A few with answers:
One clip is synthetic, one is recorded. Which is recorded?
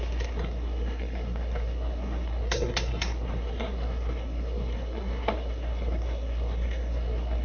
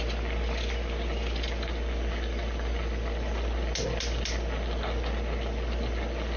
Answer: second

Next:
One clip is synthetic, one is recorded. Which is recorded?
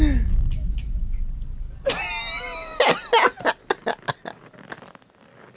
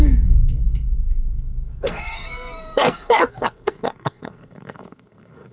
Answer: first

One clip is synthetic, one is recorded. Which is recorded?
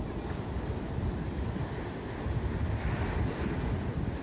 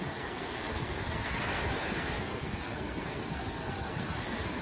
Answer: first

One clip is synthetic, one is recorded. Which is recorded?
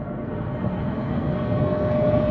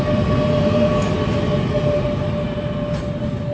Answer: second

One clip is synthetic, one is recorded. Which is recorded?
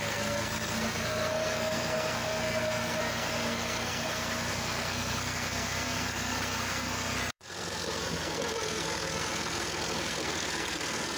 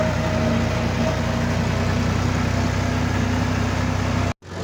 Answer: second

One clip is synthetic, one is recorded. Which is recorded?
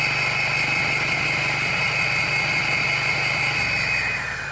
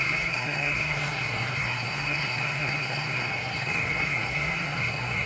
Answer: first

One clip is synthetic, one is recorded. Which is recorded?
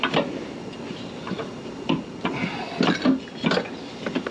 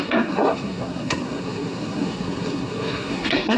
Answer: first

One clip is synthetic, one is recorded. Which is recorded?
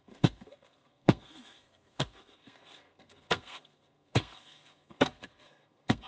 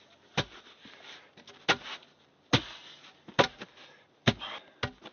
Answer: second